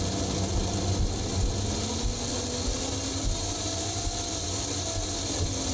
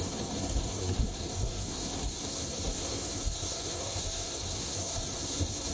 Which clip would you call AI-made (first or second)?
second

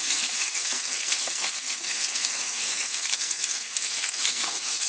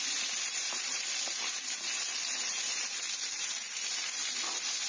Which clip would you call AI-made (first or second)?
first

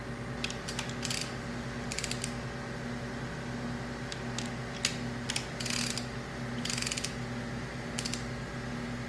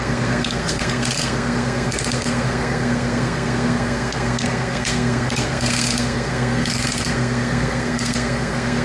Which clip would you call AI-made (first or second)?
second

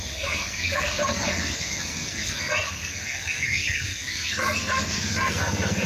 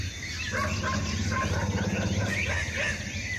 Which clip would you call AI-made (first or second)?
first